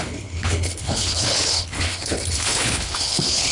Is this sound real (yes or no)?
no